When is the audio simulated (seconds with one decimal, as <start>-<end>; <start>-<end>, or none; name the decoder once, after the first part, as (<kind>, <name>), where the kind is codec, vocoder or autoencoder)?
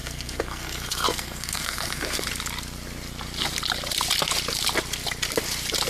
0.0-2.2 (codec, SNAC)